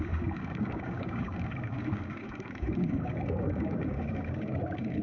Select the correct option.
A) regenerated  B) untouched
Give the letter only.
A